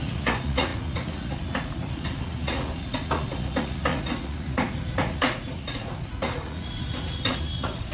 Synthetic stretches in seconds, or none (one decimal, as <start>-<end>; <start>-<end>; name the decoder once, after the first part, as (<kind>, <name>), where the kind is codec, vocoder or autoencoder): 0.0-7.9 (vocoder, Vocos)